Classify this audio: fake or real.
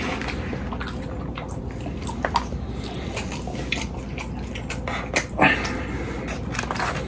real